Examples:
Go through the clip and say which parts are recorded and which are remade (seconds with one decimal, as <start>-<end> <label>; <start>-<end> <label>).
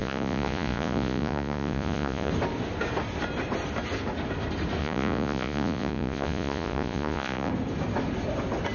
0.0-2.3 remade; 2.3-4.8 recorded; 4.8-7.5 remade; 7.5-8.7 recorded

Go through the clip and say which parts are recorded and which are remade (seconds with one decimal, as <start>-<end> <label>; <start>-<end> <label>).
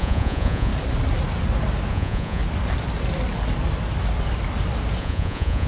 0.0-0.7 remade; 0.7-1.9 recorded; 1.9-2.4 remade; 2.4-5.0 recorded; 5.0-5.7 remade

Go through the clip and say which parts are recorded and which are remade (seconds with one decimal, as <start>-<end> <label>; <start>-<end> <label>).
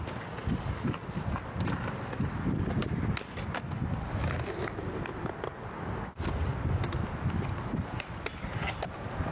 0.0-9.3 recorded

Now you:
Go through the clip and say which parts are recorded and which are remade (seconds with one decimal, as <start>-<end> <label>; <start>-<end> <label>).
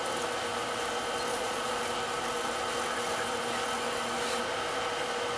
0.0-1.3 recorded; 1.3-1.8 remade; 1.8-5.4 recorded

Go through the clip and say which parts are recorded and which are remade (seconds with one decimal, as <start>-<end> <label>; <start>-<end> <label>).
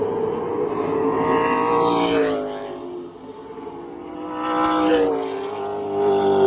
0.0-6.5 recorded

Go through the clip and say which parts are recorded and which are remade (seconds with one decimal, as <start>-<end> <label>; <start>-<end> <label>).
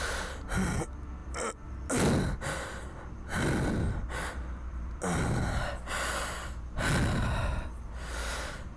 0.0-8.8 recorded